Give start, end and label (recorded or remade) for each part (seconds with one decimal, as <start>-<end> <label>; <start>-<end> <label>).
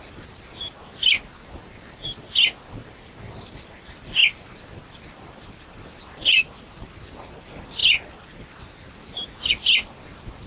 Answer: 0.0-10.5 recorded